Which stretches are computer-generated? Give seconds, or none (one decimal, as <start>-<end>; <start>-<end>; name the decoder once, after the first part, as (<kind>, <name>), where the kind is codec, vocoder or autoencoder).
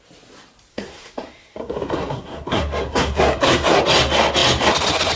0.7-3.8 (codec, SNAC)